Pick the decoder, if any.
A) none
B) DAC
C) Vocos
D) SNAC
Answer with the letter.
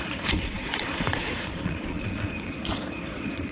C